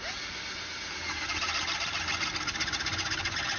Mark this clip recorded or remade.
recorded